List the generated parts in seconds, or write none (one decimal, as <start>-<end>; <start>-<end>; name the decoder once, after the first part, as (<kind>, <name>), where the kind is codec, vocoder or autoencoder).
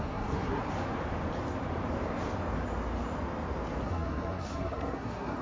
0.0-0.6 (codec, SNAC); 3.8-5.4